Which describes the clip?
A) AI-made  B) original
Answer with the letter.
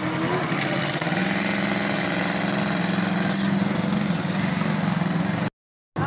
B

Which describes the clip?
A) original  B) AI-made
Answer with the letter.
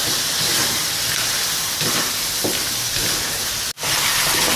A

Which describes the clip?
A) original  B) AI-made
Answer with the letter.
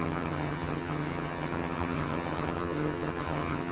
B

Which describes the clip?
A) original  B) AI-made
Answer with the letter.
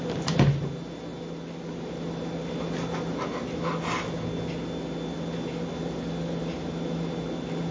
A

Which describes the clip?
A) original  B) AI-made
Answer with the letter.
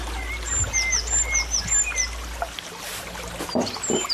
A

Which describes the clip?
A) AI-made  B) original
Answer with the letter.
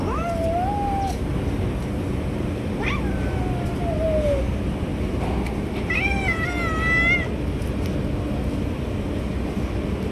B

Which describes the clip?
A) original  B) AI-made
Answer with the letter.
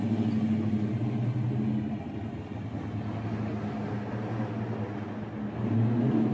A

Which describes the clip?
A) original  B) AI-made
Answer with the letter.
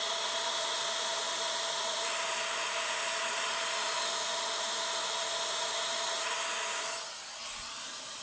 A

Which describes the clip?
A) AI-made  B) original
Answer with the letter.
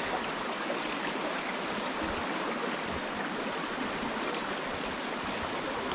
B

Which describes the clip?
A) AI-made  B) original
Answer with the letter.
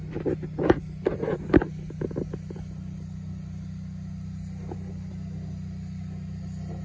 B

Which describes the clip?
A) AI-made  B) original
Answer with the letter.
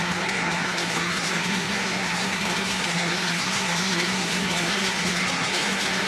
A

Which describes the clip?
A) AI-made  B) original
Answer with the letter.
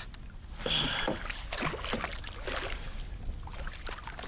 B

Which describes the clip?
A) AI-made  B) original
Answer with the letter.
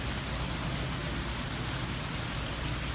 B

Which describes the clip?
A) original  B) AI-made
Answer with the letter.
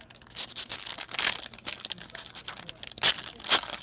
A